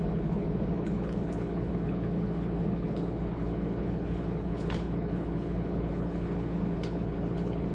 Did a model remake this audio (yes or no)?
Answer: yes